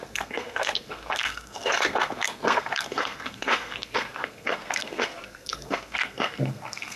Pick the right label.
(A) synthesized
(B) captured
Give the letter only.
A